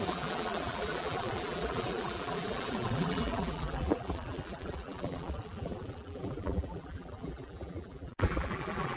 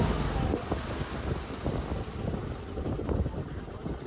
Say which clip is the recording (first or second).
second